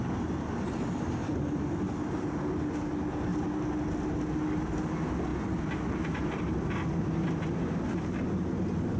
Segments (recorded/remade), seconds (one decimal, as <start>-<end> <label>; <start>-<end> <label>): 0.0-9.0 recorded